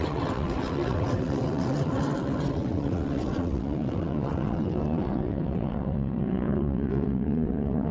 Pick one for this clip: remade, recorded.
remade